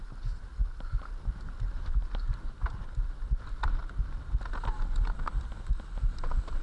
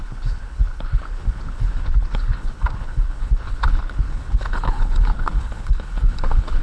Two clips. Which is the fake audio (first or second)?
second